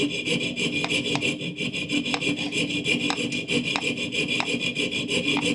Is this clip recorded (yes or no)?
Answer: yes